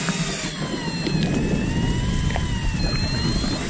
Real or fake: real